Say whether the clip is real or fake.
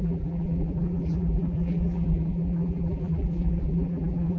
fake